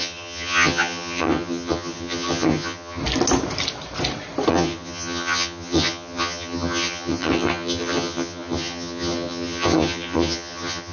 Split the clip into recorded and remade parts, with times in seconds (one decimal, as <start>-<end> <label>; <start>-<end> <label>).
0.0-3.0 remade; 3.0-4.5 recorded; 4.5-10.9 remade